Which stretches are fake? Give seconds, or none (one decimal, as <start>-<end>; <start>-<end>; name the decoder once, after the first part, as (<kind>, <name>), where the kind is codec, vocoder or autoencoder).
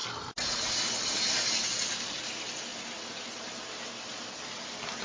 none